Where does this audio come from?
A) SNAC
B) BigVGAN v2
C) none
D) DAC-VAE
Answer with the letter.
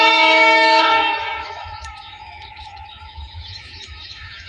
D